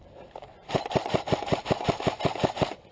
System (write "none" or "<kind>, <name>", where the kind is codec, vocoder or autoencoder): none